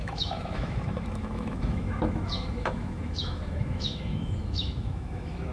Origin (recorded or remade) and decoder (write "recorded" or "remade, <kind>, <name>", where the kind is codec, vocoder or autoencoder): remade, autoencoder, DAC-VAE